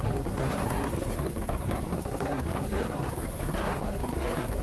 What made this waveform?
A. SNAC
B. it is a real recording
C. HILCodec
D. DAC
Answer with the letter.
A